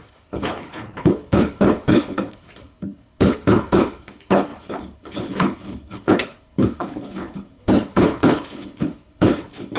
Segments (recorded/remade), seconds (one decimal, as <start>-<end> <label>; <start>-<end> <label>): 0.0-9.8 remade